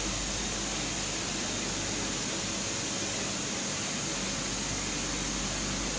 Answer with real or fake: real